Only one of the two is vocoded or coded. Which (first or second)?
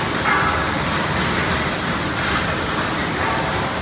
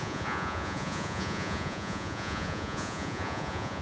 second